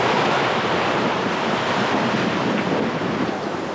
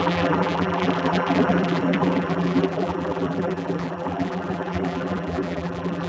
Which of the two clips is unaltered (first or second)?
first